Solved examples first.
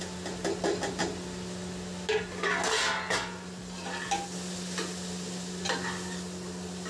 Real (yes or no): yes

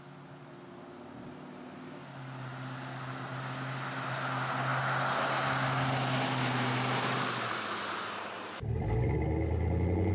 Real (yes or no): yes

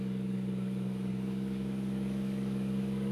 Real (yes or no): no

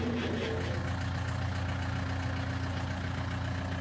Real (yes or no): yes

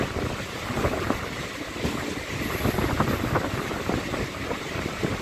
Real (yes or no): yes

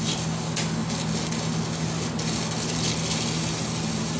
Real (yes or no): yes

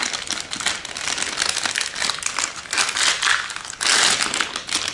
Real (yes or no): yes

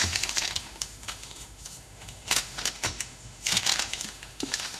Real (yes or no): no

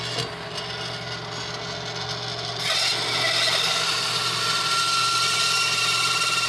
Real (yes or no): yes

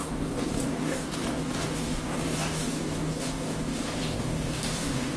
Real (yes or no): no